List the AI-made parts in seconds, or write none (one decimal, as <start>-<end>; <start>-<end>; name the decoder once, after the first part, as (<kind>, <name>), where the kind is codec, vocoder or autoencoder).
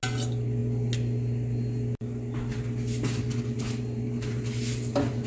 none